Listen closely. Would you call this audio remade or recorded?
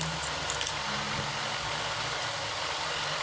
recorded